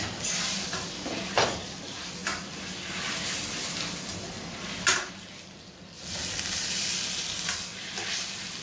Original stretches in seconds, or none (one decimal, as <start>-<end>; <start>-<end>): 0.0-8.6